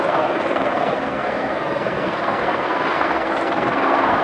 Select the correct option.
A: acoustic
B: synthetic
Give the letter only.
B